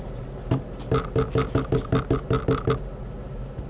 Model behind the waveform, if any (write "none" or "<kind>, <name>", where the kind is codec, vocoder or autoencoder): none